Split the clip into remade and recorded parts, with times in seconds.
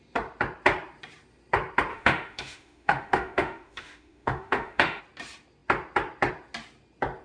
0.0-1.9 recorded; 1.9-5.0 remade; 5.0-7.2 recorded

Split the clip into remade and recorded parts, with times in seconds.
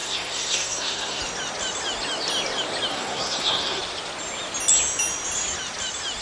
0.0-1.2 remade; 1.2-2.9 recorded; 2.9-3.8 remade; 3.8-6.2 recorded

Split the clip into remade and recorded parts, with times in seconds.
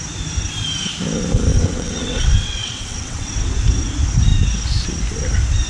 0.0-1.5 recorded; 1.5-3.3 remade; 3.3-5.7 recorded